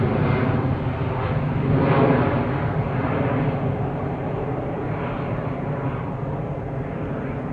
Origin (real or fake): real